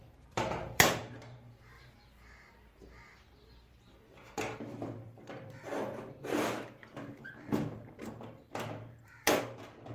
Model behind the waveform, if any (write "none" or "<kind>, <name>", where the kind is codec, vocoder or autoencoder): vocoder, BigVGAN v2